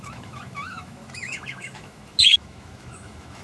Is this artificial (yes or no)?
yes